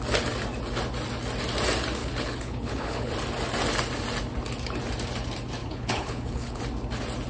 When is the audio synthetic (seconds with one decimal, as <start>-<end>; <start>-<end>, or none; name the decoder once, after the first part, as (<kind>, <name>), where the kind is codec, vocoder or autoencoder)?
2.0-3.1 (codec, HILCodec); 5.6-6.6